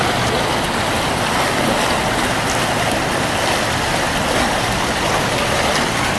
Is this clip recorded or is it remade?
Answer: recorded